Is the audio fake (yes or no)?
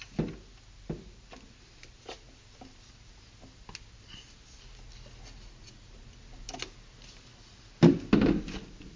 no